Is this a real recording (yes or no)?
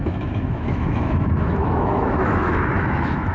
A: no